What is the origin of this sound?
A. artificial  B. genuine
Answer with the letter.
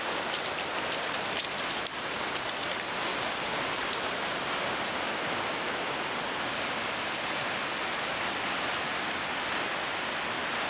B